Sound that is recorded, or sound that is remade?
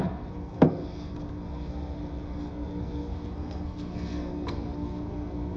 remade